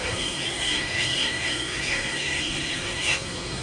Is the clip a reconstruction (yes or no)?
yes